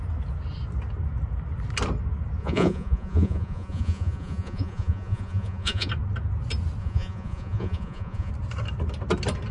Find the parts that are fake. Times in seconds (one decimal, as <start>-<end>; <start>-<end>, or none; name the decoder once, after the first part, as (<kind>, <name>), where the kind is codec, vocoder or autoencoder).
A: 2.4-5.9 (vocoder, Vocos); 6.8-8.3

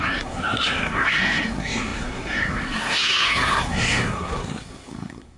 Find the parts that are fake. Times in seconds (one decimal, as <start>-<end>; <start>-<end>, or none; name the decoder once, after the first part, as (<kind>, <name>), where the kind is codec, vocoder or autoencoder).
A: 0.0-5.4 (codec, SNAC)

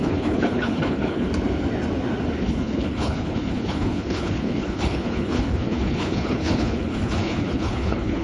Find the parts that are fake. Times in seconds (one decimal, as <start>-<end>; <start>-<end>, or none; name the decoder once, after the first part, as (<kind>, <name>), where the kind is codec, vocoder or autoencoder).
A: 0.0-1.3 (codec, HILCodec); 2.4-8.2

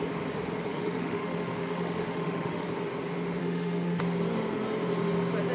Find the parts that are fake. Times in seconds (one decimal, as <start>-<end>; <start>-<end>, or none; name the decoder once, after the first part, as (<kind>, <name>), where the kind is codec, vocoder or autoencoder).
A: 0.7-2.7 (autoencoder, DAC-VAE); 3.4-4.0

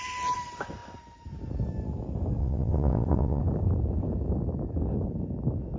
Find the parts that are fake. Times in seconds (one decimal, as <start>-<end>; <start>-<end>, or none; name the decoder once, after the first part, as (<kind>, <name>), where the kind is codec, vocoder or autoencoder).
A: 2.4-3.4 (vocoder, WaveNeXt)

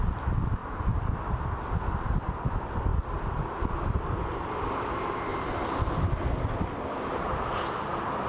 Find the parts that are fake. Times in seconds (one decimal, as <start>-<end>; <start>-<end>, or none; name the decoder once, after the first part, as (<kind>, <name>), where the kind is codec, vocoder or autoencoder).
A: 5.3-6.2 (vocoder, BigVGAN v2)